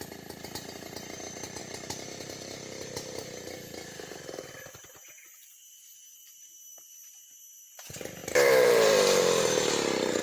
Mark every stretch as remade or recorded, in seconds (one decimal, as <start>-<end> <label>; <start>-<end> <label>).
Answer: 0.0-1.6 recorded; 1.6-4.6 remade; 4.6-8.2 recorded; 8.2-9.4 remade; 9.4-10.2 recorded